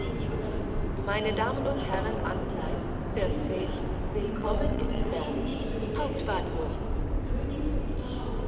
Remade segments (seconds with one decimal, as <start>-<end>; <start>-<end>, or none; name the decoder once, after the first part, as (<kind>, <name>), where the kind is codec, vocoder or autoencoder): 4.4-5.1 (vocoder, WaveNeXt)